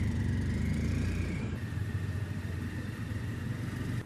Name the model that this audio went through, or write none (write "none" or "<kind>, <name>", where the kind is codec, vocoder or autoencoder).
vocoder, BigVGAN v2